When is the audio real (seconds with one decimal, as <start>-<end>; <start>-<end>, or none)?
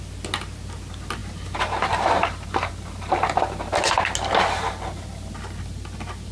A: 0.0-6.3